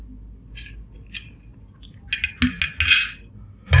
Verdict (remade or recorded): recorded